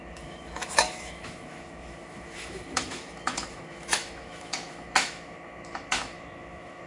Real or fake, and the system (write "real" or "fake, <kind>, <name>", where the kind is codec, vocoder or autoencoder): fake, autoencoder, DAC-VAE